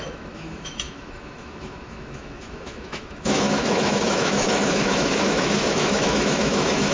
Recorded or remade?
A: remade